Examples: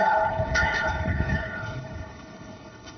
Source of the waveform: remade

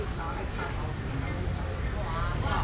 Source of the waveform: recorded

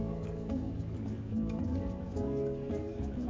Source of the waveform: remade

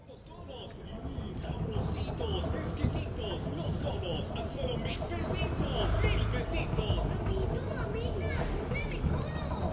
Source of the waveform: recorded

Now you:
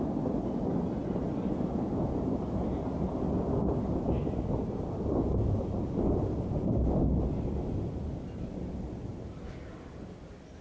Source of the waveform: recorded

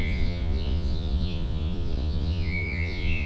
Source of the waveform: remade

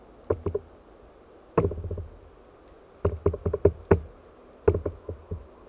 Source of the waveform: recorded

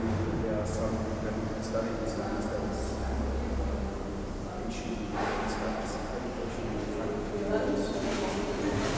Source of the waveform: recorded